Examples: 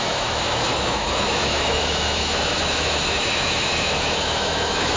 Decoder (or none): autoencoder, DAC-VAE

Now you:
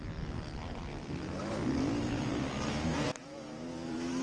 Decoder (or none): none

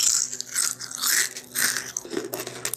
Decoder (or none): none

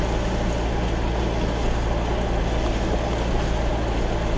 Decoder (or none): none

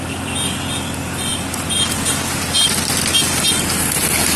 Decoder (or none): none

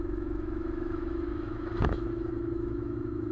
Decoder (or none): autoencoder, DAC-VAE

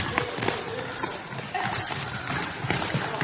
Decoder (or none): none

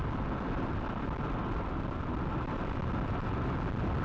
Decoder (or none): none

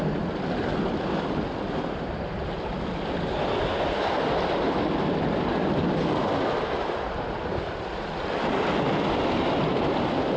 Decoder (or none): none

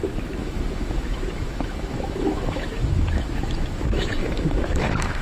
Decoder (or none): autoencoder, DAC-VAE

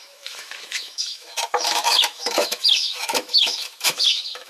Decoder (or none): autoencoder, DAC-VAE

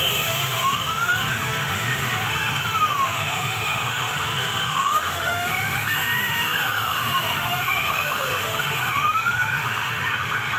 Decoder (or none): autoencoder, DAC-VAE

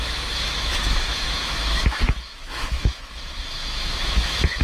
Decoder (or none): autoencoder, DAC-VAE